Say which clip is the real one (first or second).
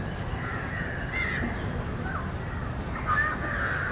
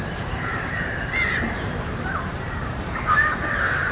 first